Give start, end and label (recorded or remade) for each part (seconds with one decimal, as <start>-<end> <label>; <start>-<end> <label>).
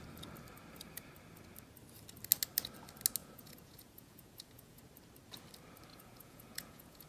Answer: 0.0-3.2 recorded; 3.2-4.8 remade; 4.8-5.9 recorded; 5.9-7.1 remade